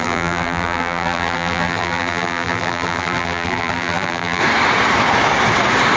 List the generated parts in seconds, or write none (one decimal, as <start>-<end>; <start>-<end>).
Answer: 0.0-4.4

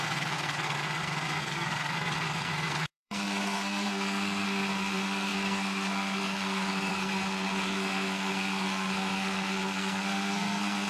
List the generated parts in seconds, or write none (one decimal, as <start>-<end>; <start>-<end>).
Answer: 0.0-10.9